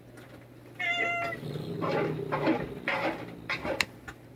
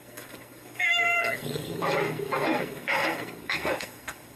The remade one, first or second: second